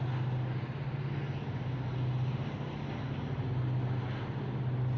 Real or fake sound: real